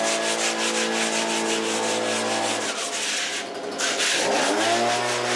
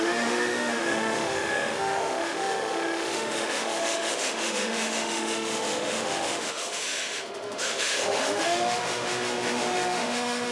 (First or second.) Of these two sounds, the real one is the first